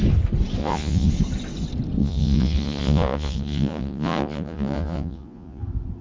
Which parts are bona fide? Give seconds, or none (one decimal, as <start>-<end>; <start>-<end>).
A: 0.0-0.6; 1.1-2.0; 5.6-6.0